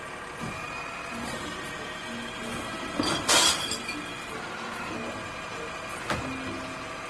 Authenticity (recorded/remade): recorded